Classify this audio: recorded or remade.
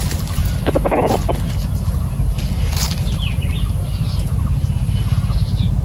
recorded